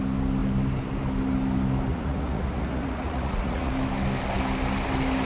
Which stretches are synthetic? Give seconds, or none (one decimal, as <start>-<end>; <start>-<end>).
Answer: 1.9-3.7